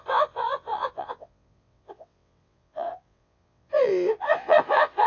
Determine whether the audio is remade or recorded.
remade